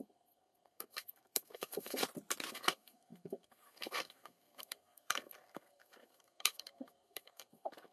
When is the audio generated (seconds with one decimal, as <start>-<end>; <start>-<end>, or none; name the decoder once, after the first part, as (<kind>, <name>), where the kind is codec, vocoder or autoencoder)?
0.0-2.0 (codec, SNAC); 2.5-7.9